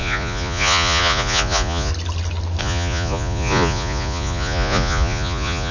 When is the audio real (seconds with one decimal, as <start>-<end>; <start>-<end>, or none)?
1.9-2.6